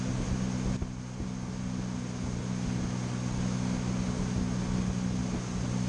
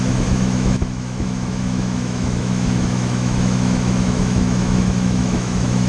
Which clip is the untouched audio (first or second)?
first